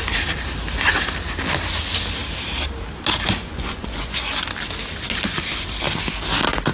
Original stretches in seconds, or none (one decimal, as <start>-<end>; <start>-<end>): 0.0-3.4; 4.3-6.7